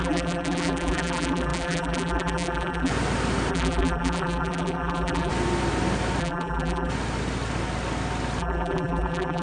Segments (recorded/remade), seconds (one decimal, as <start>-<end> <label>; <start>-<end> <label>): 0.0-2.9 remade; 2.9-3.5 recorded; 3.5-5.3 remade; 5.3-6.2 recorded; 6.2-6.9 remade; 6.9-8.4 recorded; 8.4-9.4 remade